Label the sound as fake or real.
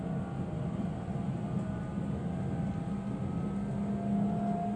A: real